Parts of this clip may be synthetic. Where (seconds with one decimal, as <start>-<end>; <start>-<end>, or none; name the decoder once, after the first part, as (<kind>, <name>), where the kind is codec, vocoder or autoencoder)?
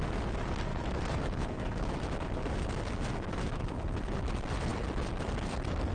0.7-3.7 (autoencoder, DAC-VAE)